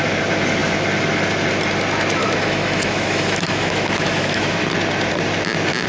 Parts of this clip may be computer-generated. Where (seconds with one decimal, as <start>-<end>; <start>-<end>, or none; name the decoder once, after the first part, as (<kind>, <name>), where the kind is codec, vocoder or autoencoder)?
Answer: 2.2-4.6 (autoencoder, DAC-VAE)